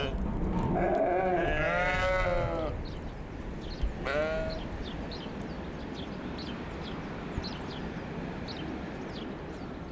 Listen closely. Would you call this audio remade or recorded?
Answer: recorded